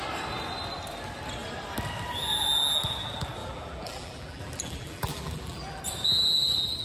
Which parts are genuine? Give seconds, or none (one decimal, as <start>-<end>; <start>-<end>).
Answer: 0.0-3.4; 5.8-6.8